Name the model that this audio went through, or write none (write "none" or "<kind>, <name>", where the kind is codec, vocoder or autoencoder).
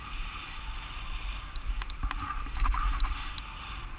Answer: none